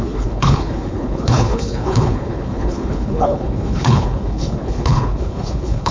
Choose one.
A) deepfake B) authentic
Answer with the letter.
A